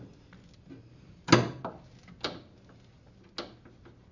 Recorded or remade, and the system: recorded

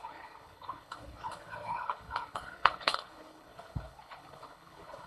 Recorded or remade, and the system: remade, codec, HILCodec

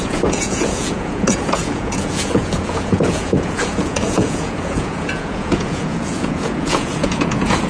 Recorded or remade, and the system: remade, vocoder, Vocos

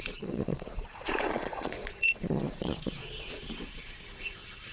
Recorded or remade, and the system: remade, vocoder, Vocos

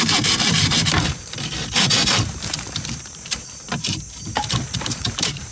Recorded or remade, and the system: remade, vocoder, BigVGAN v2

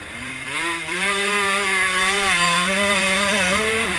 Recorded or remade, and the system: remade, vocoder, BigVGAN v2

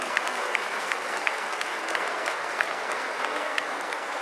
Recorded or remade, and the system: remade, codec, SNAC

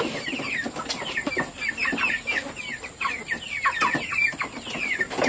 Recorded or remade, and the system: recorded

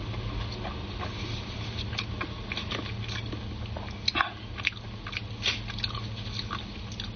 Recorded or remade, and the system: recorded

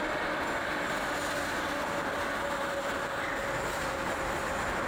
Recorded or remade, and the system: recorded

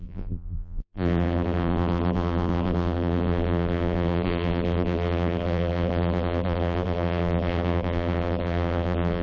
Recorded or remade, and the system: remade, vocoder, BigVGAN v2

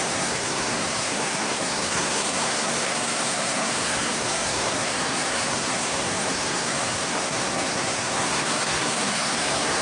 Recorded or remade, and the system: remade, codec, SNAC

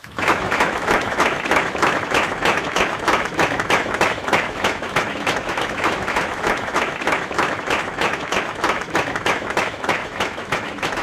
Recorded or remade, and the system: remade, autoencoder, DAC-VAE